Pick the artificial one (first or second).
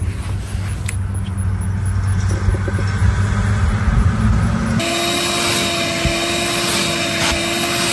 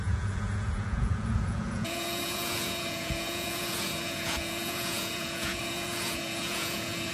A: second